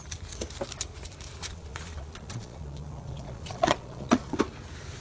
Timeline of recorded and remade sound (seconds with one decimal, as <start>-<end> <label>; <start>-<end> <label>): 0.0-1.4 recorded; 1.4-4.4 remade; 4.4-5.0 recorded